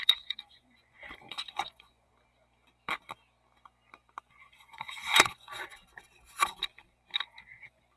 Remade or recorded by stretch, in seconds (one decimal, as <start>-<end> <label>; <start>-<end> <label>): 0.0-2.1 remade; 2.1-4.2 recorded; 4.2-5.8 remade; 5.8-7.6 recorded; 7.6-8.0 remade